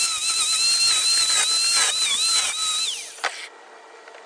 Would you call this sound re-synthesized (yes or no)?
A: no